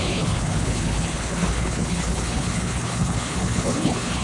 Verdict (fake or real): fake